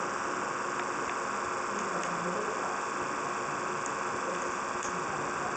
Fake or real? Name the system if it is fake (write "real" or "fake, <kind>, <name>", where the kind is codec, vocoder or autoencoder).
real